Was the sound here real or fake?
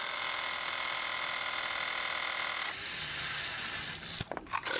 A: real